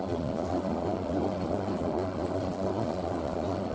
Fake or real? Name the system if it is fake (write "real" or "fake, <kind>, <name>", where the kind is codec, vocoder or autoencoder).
fake, vocoder, Vocos